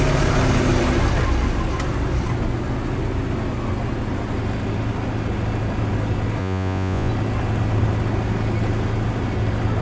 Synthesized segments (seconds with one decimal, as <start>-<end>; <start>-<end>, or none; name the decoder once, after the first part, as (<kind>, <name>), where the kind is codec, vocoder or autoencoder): 6.4-7.1 (vocoder, Vocos)